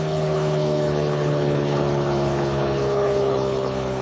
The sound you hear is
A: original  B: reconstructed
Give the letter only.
B